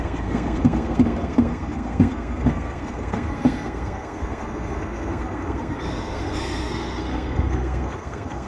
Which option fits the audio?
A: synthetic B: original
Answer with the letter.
A